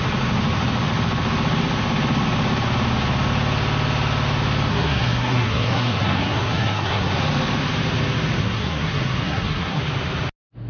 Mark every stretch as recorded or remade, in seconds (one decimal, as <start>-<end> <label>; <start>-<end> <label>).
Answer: 0.0-4.7 recorded; 4.7-7.1 remade; 7.1-8.4 recorded; 8.4-9.8 remade; 9.8-10.7 recorded